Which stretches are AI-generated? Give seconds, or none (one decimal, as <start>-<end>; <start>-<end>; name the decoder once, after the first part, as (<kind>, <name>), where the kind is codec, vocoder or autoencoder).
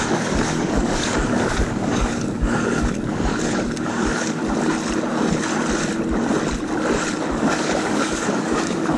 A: 0.0-4.4 (codec, DAC); 7.3-9.0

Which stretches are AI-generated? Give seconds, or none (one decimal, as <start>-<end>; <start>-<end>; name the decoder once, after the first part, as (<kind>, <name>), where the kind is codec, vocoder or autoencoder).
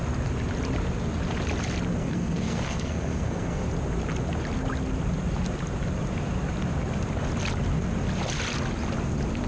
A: 2.0-3.7 (codec, SNAC)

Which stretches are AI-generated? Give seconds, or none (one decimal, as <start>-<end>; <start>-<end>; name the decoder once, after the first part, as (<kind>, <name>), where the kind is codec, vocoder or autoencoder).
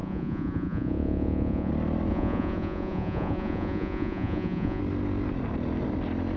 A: 0.0-1.7 (vocoder, Vocos); 2.1-4.8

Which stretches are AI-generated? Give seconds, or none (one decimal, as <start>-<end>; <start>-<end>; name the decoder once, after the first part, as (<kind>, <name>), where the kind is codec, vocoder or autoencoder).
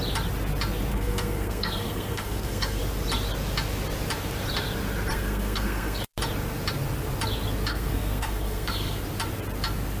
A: 0.9-2.8 (codec, SNAC); 5.1-6.1; 7.7-9.0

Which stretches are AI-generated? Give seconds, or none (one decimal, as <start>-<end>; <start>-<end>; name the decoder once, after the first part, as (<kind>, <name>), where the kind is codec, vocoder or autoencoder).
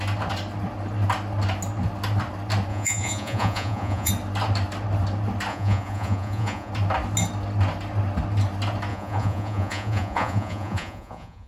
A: 2.7-4.1 (vocoder, Vocos); 5.5-6.7; 8.9-11.5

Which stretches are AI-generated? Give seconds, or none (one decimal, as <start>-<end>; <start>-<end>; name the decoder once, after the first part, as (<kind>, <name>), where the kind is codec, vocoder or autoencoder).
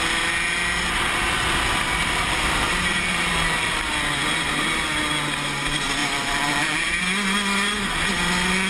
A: 2.0-3.9 (vocoder, BigVGAN v2); 6.0-7.0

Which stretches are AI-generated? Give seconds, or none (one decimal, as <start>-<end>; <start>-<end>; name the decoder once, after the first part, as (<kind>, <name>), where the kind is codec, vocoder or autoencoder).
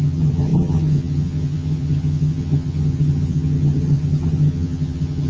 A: 0.0-5.3 (vocoder, HiFi-GAN)